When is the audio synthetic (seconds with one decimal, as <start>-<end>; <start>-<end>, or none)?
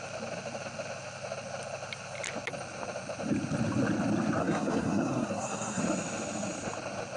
4.4-5.8